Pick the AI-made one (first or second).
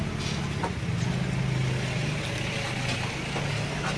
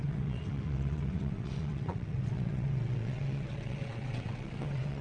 second